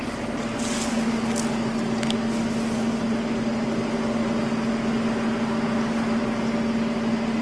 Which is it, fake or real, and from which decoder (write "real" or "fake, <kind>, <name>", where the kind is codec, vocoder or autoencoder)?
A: real